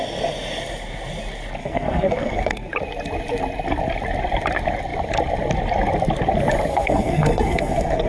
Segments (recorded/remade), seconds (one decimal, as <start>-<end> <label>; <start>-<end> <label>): 0.0-1.6 recorded; 1.6-2.7 remade; 2.7-6.7 recorded; 6.7-8.1 remade